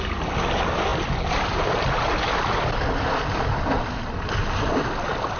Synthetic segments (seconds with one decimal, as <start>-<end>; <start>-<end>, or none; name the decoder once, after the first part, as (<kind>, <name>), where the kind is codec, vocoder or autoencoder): none